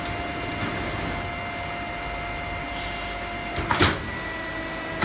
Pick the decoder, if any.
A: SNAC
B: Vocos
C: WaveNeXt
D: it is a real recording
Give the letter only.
D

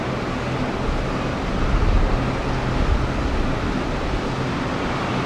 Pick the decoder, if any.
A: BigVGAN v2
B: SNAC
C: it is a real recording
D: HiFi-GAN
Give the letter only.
C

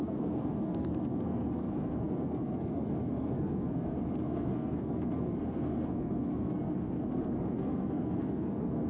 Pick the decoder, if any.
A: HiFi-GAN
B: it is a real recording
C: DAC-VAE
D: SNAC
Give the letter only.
D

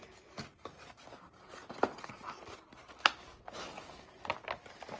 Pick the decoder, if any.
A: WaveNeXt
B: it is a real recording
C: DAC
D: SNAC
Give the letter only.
B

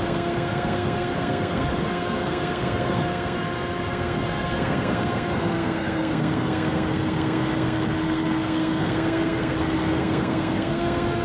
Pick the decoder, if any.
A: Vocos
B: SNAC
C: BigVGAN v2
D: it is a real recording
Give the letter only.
B